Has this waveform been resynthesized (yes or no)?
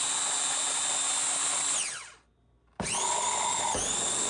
no